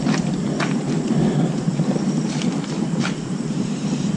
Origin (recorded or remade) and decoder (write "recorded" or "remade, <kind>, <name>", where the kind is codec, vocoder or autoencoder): remade, vocoder, BigVGAN v2